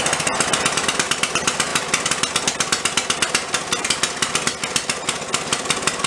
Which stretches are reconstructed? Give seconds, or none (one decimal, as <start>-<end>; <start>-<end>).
none